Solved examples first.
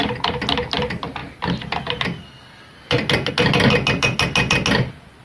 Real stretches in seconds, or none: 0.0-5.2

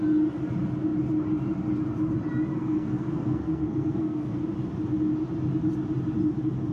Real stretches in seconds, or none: 0.0-2.5; 4.4-6.7

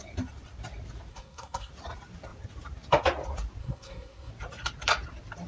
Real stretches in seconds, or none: 0.0-1.1; 1.7-3.6; 4.3-5.5

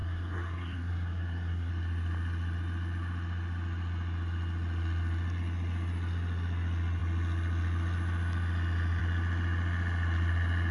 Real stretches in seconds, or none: 1.7-10.7